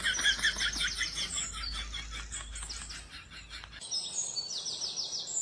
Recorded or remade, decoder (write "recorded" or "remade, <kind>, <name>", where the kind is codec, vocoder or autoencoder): recorded